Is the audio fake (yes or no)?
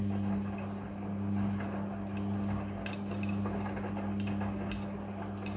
no